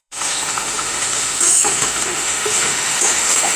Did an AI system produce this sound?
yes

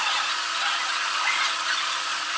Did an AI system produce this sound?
no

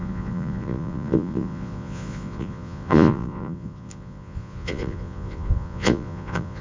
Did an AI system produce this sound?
yes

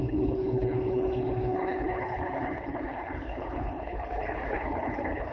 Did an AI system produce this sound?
yes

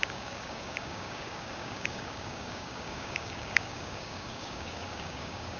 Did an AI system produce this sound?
yes